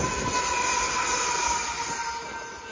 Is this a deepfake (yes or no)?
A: no